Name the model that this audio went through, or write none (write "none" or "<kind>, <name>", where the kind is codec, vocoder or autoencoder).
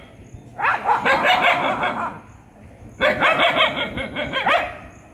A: none